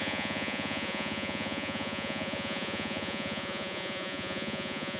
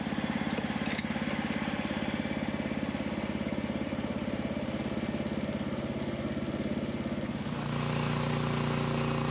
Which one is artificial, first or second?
first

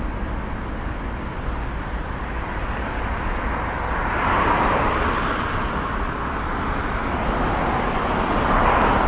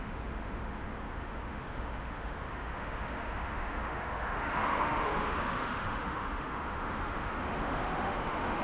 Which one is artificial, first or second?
second